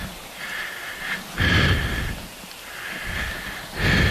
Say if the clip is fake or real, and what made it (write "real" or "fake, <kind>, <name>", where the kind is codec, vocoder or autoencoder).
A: real